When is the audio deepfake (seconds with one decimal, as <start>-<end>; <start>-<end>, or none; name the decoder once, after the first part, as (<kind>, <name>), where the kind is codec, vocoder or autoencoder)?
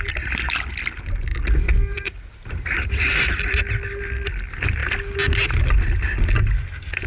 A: 1.9-3.6 (vocoder, BigVGAN v2)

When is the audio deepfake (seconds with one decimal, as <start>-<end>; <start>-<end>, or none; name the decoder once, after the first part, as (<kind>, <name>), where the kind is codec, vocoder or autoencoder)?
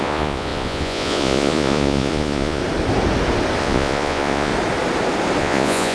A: 0.0-2.6 (vocoder, Vocos); 3.6-4.5; 5.4-5.9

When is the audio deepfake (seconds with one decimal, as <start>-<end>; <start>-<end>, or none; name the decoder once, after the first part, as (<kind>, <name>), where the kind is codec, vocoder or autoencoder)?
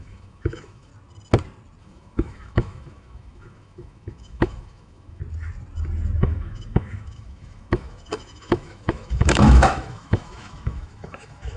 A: 0.0-0.9 (autoencoder, DAC-VAE); 1.8-5.2; 6.2-11.6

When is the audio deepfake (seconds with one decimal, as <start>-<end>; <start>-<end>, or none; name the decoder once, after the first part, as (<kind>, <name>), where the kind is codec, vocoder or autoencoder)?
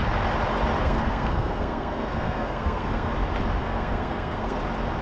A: 0.8-3.1 (codec, SNAC); 3.6-4.6